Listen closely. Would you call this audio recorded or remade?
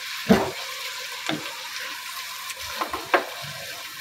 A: recorded